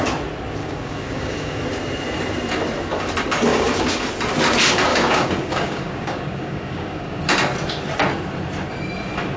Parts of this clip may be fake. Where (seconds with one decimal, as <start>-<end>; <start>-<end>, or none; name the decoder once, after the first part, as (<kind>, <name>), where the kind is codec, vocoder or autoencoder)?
0.6-1.6 (codec, DAC); 3.5-4.1; 4.9-7.2